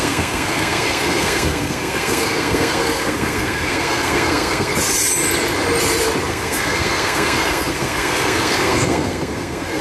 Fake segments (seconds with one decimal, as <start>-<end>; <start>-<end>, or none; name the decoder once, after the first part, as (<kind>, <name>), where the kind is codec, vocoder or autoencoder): 0.0-4.7 (codec, SNAC); 6.3-9.8